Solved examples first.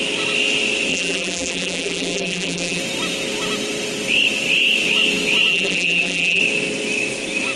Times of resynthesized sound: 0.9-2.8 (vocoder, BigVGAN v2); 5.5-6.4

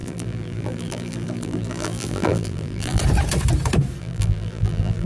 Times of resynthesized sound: 0.0-3.0 (vocoder, BigVGAN v2); 4.0-5.1

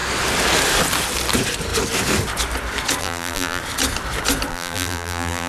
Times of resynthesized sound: 3.0-3.6 (vocoder, BigVGAN v2); 4.5-5.5

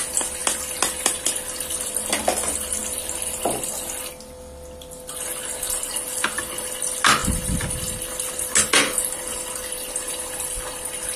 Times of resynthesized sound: none

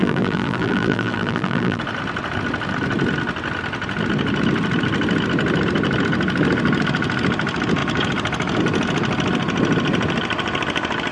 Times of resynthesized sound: 0.0-1.8 (vocoder, BigVGAN v2)

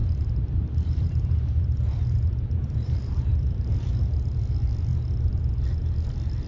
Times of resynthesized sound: 0.0-3.9 (vocoder, BigVGAN v2)

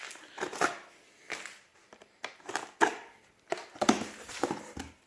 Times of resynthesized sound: 1.7-2.8 (vocoder, BigVGAN v2)

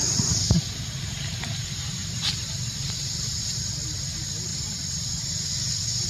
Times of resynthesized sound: 0.9-2.0 (vocoder, BigVGAN v2); 3.6-4.5